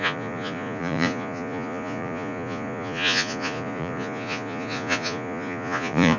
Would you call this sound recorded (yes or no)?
no